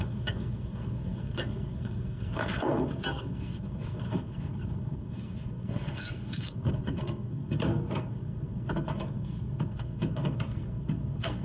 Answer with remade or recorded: remade